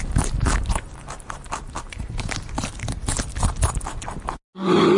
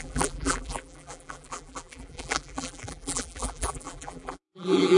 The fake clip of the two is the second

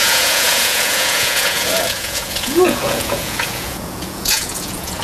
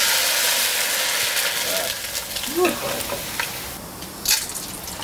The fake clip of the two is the first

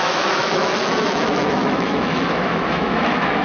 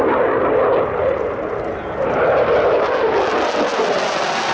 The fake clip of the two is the first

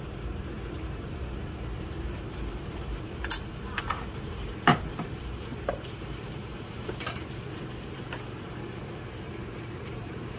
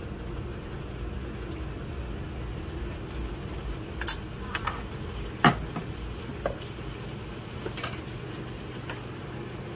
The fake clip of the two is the first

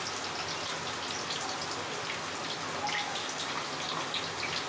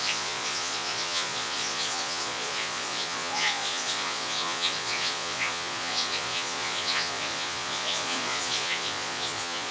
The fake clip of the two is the second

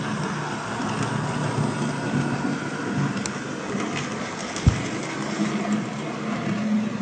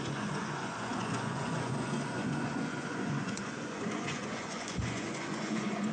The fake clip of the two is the second